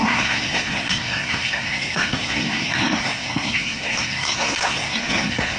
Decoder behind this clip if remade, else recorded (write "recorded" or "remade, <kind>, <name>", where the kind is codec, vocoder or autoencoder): remade, codec, SNAC